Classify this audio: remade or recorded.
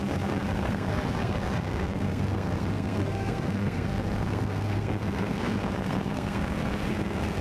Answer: remade